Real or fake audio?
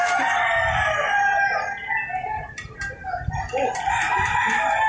real